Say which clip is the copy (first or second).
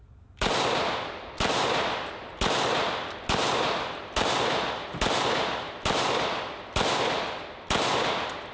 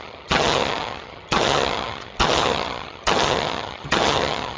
second